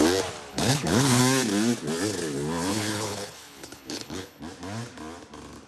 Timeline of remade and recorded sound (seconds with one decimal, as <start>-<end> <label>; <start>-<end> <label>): 0.0-0.5 recorded; 0.5-1.2 remade; 1.2-2.7 recorded; 2.7-4.4 remade; 4.4-5.7 recorded